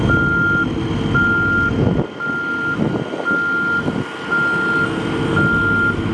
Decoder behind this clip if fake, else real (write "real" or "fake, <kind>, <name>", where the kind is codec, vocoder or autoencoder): real